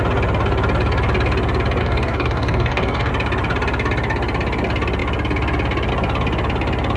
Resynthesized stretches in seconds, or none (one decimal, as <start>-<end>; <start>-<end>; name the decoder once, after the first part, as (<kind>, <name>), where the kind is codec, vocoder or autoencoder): 1.8-3.1 (codec, DAC)